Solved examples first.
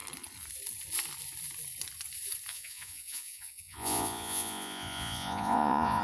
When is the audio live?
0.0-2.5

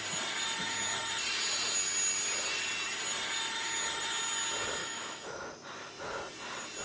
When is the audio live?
0.0-4.8; 5.5-6.8

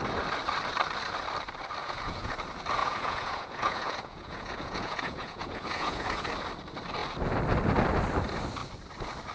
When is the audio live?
0.0-1.8; 2.3-2.8; 6.3-9.3

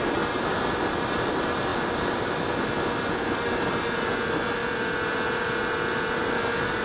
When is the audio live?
0.0-6.8

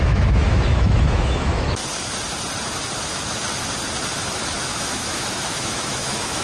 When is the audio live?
1.8-4.6